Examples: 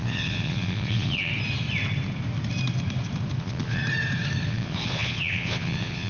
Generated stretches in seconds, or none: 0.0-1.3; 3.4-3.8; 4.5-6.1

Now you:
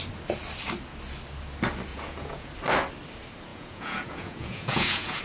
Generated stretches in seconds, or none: 1.9-2.5; 3.5-5.2

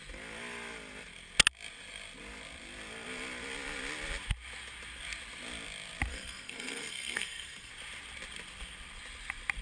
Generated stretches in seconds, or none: 6.1-7.7

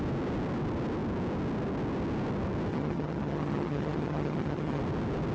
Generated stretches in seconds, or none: 2.7-4.8